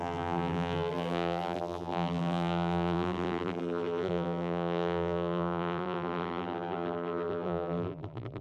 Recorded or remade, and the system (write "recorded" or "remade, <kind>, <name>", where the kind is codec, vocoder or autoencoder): remade, vocoder, BigVGAN v2